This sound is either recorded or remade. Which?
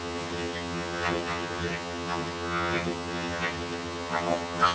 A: remade